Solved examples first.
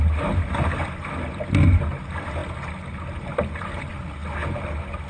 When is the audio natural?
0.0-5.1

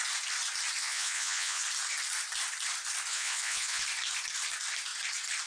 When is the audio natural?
0.0-0.8; 1.6-3.1; 3.8-5.5

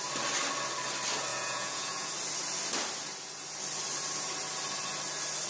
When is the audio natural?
0.0-1.3; 2.1-5.5

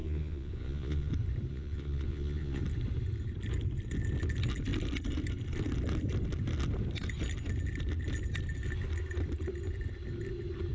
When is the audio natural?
1.1-1.5; 2.6-10.7

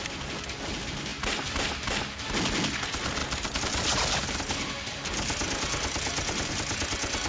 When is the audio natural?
0.0-7.3

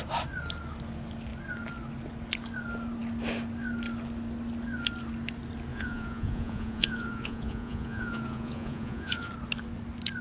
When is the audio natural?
0.0-5.7; 9.3-10.2

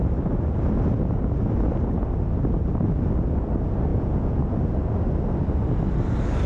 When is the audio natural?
0.0-3.9; 4.4-6.5

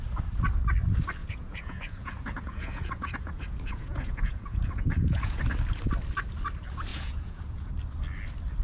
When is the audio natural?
0.0-1.2; 5.4-6.9; 7.7-8.6